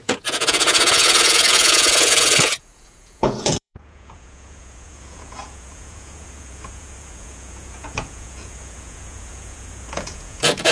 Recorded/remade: remade